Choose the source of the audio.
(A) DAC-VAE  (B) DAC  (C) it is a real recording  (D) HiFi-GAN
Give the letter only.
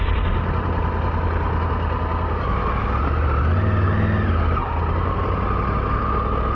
C